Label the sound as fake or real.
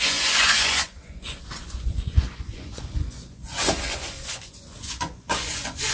fake